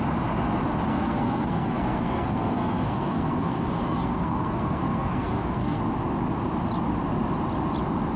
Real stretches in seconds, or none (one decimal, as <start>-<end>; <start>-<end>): 0.0-0.9; 5.8-8.2